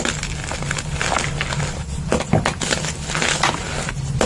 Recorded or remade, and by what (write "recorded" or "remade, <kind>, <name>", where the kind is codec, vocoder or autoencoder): recorded